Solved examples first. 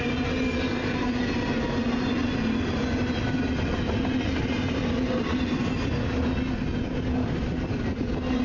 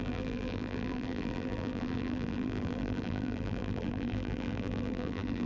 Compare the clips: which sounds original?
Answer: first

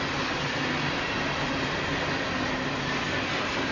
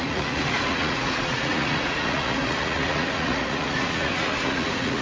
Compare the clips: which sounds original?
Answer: first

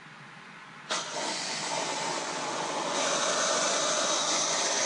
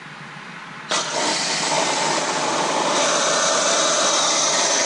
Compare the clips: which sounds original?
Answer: second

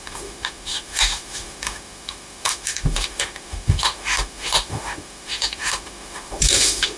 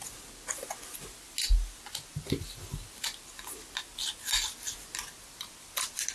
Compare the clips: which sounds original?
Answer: second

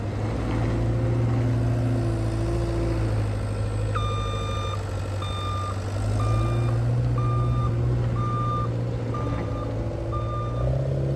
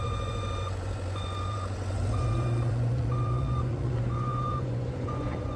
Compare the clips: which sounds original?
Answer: first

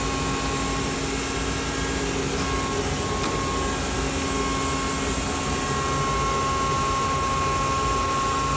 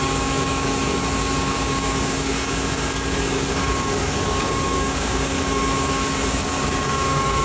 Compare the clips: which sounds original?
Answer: first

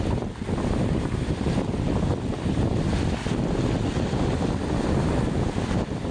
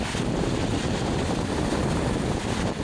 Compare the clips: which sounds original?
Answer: first